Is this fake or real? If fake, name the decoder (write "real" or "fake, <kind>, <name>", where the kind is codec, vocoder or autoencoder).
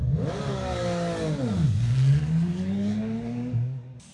fake, codec, DAC